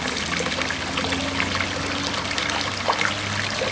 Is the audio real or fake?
real